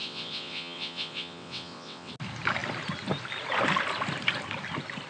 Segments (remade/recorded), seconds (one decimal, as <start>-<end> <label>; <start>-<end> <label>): 0.0-2.1 remade; 2.1-5.1 recorded